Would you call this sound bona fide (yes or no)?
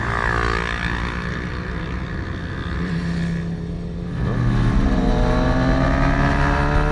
yes